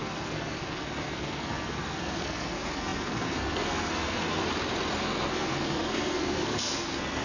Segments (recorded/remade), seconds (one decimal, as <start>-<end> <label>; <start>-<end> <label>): 0.0-4.4 remade; 4.4-5.0 recorded; 5.0-7.2 remade